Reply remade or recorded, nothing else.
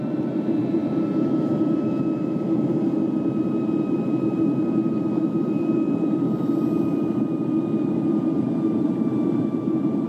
remade